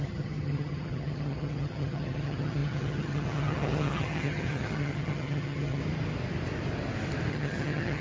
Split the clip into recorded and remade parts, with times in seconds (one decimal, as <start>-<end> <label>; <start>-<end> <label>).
0.0-5.8 remade; 5.8-7.3 recorded; 7.3-8.0 remade